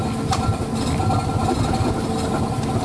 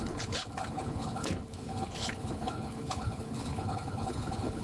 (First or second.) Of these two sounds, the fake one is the second